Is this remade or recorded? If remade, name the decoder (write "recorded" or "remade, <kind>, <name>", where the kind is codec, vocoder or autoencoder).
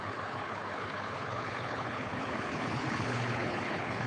remade, codec, HILCodec